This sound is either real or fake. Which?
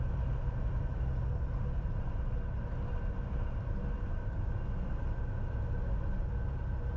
real